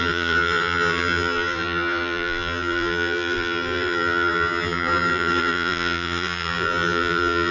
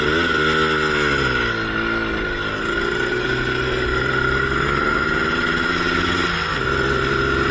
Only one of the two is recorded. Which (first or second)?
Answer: second